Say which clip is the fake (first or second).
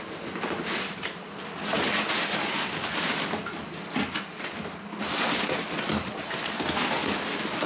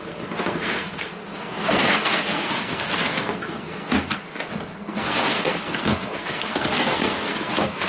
second